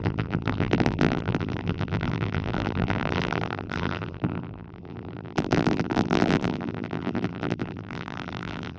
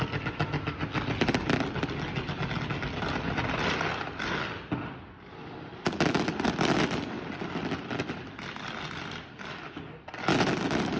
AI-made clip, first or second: first